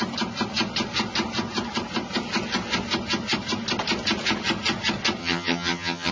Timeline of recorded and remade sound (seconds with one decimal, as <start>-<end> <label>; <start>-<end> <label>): 0.0-5.2 recorded; 5.2-6.1 remade

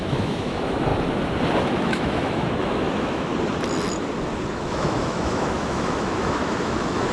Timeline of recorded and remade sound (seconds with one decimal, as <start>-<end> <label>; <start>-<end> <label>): 0.0-0.9 remade; 0.9-1.6 recorded; 1.6-3.3 remade; 3.3-4.5 recorded; 4.5-7.1 remade

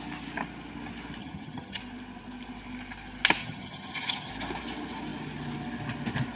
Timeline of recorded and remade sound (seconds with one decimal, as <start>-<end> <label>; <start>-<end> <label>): 0.0-1.2 recorded; 1.2-1.8 remade; 1.8-3.4 recorded; 3.4-4.3 remade; 4.3-6.4 recorded

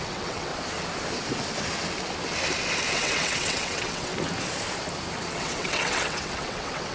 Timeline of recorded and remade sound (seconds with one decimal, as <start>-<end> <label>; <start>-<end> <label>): 0.0-0.5 remade; 0.5-2.9 recorded; 2.9-4.1 remade; 4.1-5.3 recorded; 5.3-6.9 remade

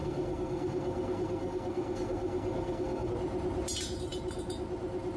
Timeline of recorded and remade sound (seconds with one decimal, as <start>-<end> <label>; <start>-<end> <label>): 0.0-3.1 remade; 3.1-5.2 recorded

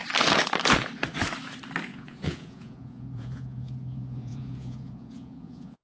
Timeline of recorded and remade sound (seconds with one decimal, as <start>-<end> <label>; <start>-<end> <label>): 0.0-1.9 recorded; 1.9-5.8 remade

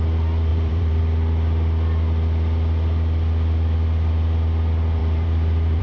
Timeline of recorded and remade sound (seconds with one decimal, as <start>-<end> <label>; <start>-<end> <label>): 0.0-0.5 recorded; 0.5-1.0 remade; 1.0-5.0 recorded; 5.0-5.8 remade

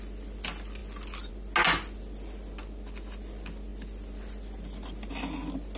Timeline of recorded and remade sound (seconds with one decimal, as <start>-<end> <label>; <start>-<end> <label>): 0.0-5.8 recorded